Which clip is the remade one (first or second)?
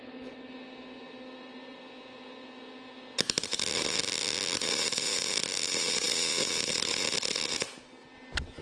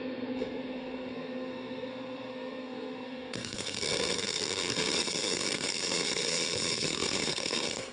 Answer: second